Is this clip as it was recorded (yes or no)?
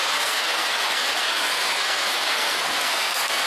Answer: no